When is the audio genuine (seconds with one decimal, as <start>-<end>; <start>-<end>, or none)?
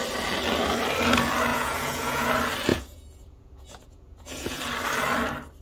0.0-1.5; 2.3-2.7; 4.6-5.6